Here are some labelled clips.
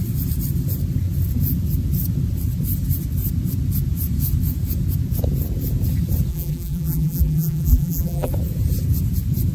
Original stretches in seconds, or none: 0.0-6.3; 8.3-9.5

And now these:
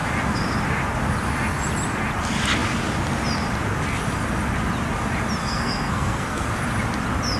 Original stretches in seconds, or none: 0.0-5.4; 6.5-7.4

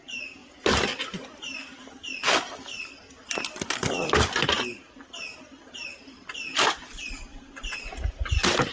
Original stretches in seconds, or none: 0.0-8.7

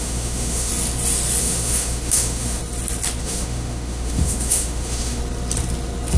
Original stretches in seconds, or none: 0.7-1.4; 2.6-3.2; 5.2-6.2